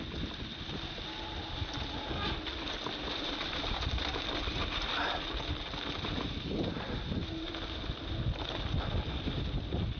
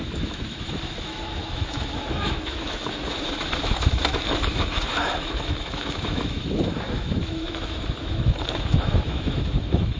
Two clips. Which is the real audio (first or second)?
first